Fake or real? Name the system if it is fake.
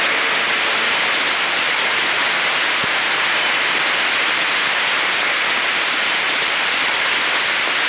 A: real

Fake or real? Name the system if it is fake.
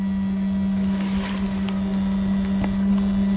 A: real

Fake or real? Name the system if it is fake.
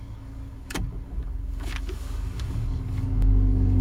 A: fake, codec, DAC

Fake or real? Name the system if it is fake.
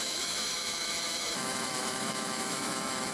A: fake, autoencoder, DAC-VAE